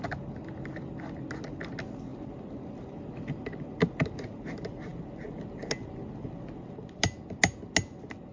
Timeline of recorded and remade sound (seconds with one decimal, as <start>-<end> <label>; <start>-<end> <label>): 0.0-8.3 recorded